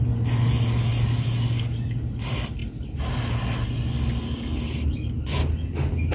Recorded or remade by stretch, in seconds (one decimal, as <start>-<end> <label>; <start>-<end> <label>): 0.0-6.1 recorded